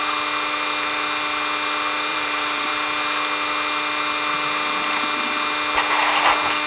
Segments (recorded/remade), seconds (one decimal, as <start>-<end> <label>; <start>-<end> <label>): 0.0-2.1 recorded; 2.1-2.7 remade; 2.7-6.7 recorded